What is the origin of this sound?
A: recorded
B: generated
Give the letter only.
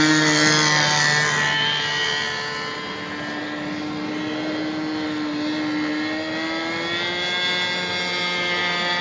A